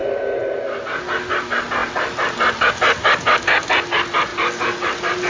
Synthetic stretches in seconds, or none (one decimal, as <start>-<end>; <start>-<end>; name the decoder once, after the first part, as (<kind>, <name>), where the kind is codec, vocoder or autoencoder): none